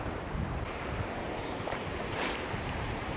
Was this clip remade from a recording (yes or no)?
yes